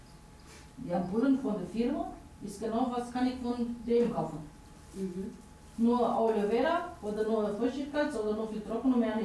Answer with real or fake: real